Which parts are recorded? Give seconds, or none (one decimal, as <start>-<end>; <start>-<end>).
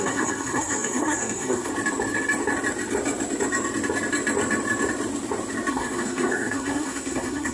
1.7-5.7